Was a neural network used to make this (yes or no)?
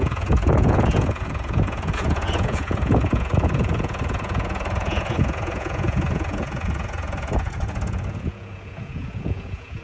yes